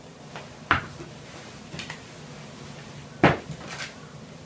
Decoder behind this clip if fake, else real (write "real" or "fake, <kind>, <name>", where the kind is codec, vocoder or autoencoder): real